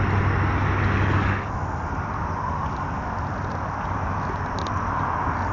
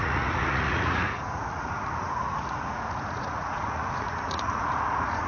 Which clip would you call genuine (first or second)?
first